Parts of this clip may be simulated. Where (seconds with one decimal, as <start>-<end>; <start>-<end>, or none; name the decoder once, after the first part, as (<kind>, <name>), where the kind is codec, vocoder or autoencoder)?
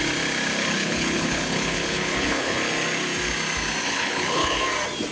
0.6-2.6 (codec, HILCodec); 3.8-4.6